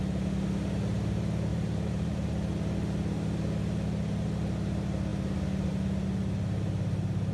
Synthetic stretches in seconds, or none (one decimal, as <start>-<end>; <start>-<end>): 1.5-2.3